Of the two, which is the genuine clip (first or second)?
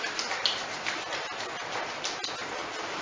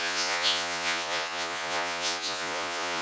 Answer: first